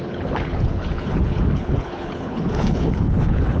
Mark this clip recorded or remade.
remade